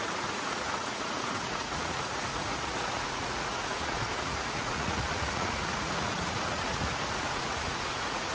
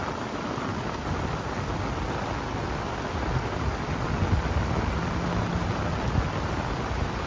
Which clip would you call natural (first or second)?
second